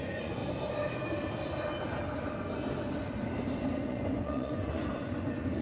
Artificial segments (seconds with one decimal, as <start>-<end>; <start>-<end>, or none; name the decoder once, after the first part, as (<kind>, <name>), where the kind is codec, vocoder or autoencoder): 0.0-0.4 (vocoder, Vocos); 3.8-5.6